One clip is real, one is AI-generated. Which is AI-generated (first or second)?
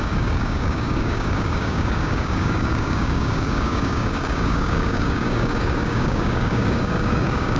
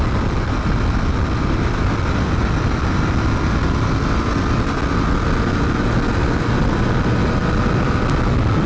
first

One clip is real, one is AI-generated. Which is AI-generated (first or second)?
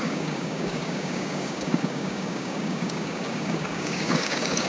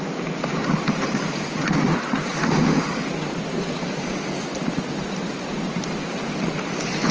first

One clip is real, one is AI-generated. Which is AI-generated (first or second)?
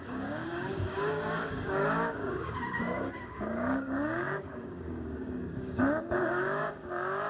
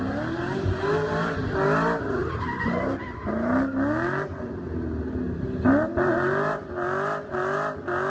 first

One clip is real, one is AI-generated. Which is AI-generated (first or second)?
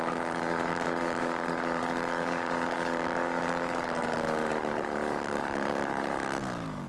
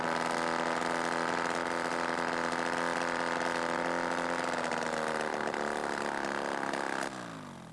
first